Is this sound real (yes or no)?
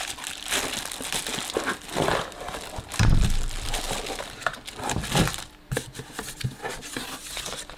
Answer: yes